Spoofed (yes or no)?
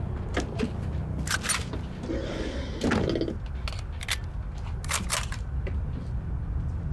no